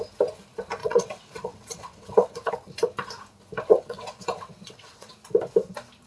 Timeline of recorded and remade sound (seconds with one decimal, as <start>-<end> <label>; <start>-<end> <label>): 0.0-0.8 recorded; 0.8-2.5 remade; 2.5-3.7 recorded; 3.7-5.1 remade; 5.1-6.1 recorded